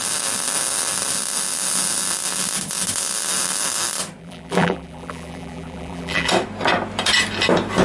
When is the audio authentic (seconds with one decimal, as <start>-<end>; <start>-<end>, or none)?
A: 0.0-4.2; 6.3-7.8